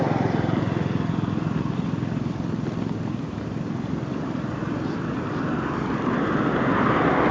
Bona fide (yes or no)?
no